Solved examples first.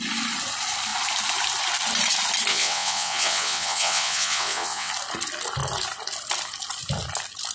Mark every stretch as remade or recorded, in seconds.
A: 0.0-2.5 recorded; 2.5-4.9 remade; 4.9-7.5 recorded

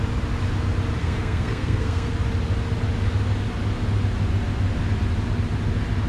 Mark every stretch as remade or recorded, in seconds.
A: 0.0-1.0 recorded; 1.0-2.1 remade; 2.1-6.1 recorded

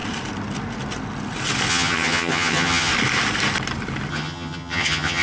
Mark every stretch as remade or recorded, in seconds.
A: 0.0-1.7 recorded; 1.7-2.9 remade; 2.9-4.1 recorded; 4.1-5.2 remade

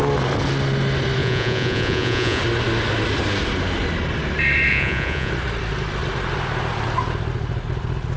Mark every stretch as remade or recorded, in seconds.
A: 0.0-1.2 recorded; 1.2-2.4 remade; 2.4-4.7 recorded; 4.7-5.3 remade; 5.3-8.2 recorded